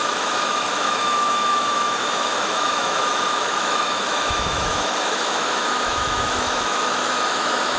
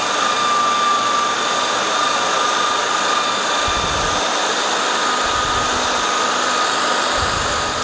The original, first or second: second